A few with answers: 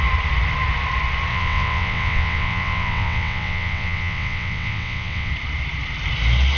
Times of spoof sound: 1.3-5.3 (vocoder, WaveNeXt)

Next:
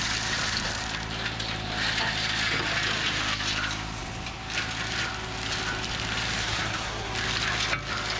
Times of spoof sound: 6.4-7.1 (codec, SNAC)